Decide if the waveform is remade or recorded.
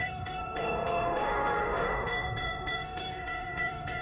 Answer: remade